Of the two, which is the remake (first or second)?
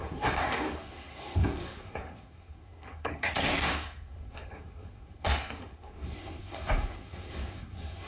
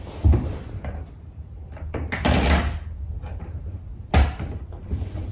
first